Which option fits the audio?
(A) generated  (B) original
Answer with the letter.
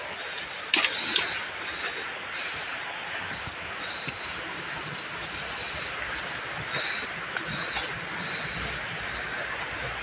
B